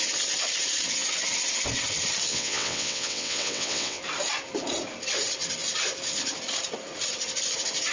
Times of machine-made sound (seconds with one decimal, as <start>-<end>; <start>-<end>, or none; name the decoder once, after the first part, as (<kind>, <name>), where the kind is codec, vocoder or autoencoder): 2.3-4.0 (vocoder, WaveNeXt)